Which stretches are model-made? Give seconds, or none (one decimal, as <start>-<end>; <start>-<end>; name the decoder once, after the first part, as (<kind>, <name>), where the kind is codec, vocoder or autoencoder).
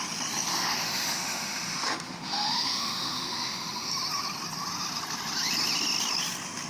0.5-3.9 (autoencoder, DAC-VAE)